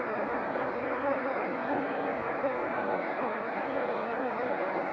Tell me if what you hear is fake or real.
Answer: fake